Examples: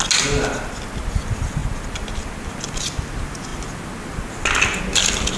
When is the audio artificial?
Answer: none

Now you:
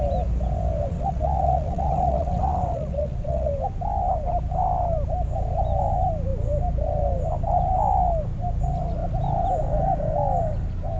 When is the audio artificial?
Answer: 0.9-3.5 (vocoder, WaveNeXt)